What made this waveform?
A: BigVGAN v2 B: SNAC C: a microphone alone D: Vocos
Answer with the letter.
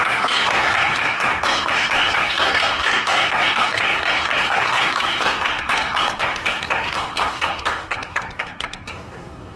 B